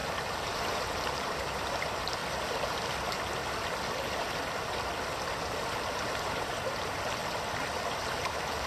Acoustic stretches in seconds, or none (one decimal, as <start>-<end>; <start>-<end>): 2.2-5.4; 7.2-7.9